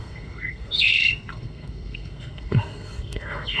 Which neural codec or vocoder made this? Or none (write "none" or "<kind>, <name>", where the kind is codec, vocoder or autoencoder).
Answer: codec, SNAC